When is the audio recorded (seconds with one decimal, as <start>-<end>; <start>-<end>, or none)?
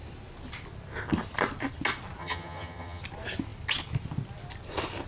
0.0-2.2; 3.0-5.1